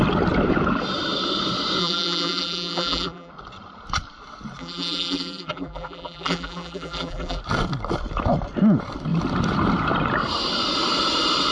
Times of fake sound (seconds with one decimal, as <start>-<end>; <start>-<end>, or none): 1.8-3.3; 4.6-7.4

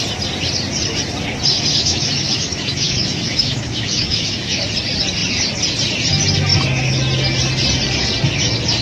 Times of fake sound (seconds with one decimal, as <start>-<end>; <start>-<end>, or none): 1.8-4.6